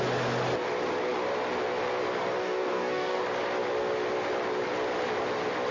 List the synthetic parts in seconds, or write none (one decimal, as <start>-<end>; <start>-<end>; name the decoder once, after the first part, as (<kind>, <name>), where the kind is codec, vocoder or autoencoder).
2.4-3.2 (codec, DAC)